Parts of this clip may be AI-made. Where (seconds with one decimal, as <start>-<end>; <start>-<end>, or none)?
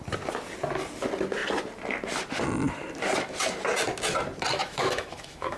4.6-5.6